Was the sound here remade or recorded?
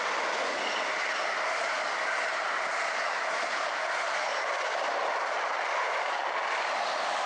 recorded